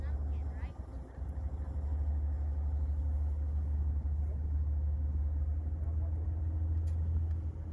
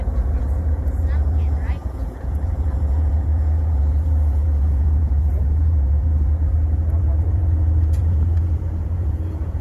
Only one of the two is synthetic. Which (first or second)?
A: second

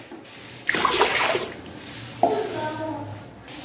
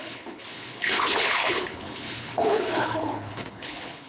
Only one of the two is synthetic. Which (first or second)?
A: second